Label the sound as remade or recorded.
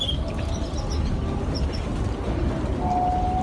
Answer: recorded